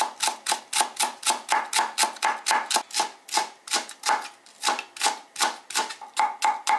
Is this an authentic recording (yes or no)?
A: yes